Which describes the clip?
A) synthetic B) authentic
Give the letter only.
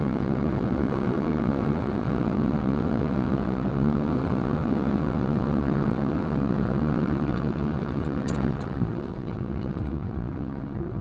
A